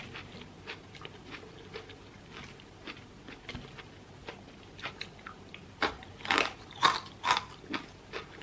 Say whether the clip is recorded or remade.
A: recorded